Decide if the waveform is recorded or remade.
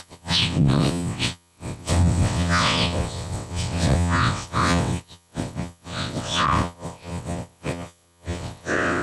remade